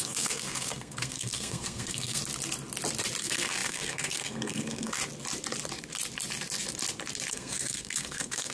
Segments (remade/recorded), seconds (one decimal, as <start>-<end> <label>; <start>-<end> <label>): 0.0-2.2 remade; 2.2-3.2 recorded; 3.2-5.0 remade; 5.0-7.3 recorded; 7.3-8.5 remade